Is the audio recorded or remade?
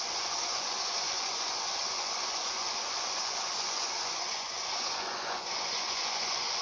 remade